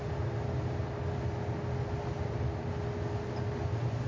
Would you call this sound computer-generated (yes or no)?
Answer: no